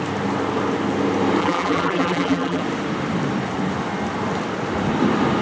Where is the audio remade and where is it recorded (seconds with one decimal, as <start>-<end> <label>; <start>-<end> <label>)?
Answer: 0.0-1.4 recorded; 1.4-2.6 remade; 2.6-5.4 recorded